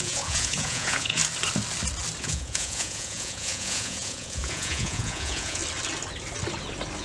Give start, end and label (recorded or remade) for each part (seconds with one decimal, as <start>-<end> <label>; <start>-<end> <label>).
0.0-1.2 remade; 1.2-2.2 recorded; 2.2-5.6 remade; 5.6-7.0 recorded